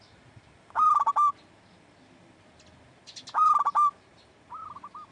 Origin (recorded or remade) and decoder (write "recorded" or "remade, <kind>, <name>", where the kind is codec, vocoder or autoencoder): recorded